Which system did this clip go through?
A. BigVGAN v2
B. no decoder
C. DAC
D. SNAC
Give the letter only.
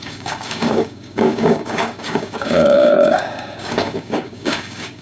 C